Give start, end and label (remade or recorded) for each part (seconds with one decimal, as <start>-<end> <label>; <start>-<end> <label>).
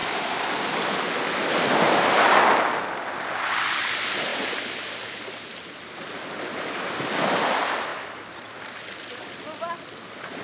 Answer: 0.0-10.4 recorded